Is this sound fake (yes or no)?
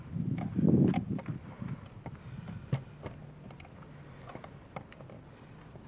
no